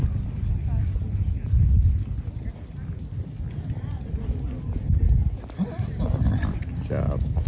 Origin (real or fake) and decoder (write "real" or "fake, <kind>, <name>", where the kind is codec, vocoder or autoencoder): real